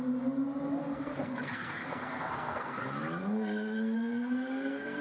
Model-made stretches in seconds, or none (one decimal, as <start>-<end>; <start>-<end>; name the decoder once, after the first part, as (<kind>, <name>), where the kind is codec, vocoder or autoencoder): 0.8-2.8 (codec, SNAC); 3.2-5.0

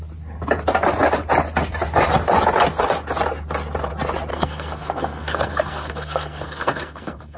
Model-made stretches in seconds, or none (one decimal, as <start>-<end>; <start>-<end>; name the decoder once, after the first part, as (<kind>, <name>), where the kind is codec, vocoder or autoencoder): 4.3-7.4 (codec, SNAC)

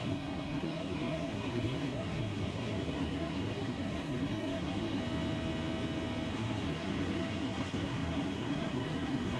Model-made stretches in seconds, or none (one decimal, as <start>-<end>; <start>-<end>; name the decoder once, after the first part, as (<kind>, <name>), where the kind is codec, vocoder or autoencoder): 0.0-5.0 (codec, SNAC); 6.3-9.4

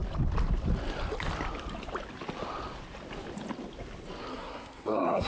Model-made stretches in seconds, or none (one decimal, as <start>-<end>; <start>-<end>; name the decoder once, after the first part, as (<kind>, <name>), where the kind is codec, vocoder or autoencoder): 4.3-5.3 (codec, SNAC)

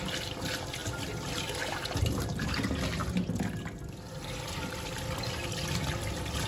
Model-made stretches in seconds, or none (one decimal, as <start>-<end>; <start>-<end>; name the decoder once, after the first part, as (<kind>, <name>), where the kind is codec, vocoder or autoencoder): none